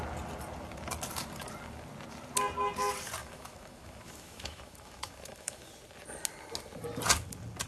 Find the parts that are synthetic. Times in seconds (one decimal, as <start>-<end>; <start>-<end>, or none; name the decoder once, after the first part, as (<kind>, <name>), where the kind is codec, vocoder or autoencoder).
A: 3.2-5.7 (autoencoder, DAC-VAE)